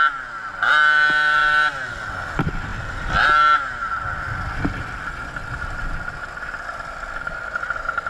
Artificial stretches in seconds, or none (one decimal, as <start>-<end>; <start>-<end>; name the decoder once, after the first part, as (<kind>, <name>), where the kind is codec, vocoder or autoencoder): none